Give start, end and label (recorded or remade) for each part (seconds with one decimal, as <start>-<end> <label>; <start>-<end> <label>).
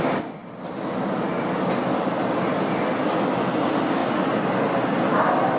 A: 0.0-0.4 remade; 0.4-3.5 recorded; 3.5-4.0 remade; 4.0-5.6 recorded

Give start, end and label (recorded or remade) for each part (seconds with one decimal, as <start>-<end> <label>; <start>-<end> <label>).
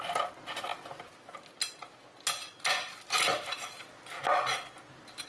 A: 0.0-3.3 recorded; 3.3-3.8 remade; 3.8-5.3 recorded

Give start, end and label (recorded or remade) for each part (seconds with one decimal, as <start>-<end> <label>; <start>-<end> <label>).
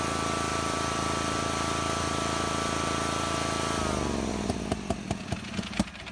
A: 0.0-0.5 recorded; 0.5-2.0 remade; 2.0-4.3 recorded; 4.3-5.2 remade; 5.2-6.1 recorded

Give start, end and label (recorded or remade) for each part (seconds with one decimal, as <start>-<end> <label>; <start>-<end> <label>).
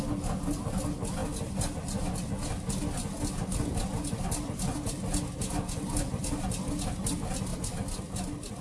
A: 0.0-7.5 recorded; 7.5-8.0 remade; 8.0-8.6 recorded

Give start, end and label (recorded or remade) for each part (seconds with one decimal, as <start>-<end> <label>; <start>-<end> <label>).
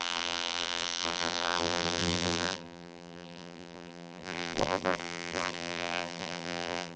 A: 0.0-7.0 remade